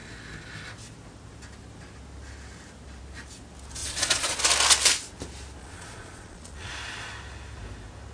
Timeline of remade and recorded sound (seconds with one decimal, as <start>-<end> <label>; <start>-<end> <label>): 0.0-3.8 recorded; 3.8-4.4 remade; 4.4-5.6 recorded; 5.6-6.7 remade; 6.7-8.1 recorded